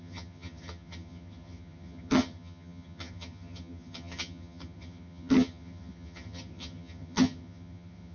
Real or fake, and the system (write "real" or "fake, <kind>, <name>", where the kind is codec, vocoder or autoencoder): fake, vocoder, HiFi-GAN